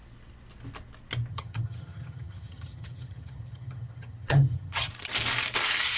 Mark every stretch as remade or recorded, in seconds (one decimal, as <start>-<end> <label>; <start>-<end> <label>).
0.0-1.3 recorded; 1.3-4.9 remade; 4.9-6.0 recorded